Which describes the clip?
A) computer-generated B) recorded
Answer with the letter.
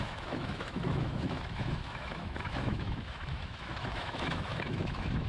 A